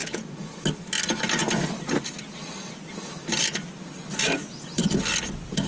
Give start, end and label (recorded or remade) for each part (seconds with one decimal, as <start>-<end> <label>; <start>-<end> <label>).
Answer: 0.0-0.6 remade; 0.6-5.7 recorded